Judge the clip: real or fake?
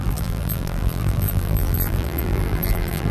fake